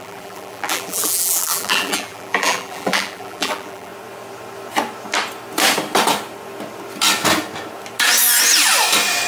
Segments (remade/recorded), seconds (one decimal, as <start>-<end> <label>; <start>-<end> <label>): 0.0-3.9 remade; 3.9-9.3 recorded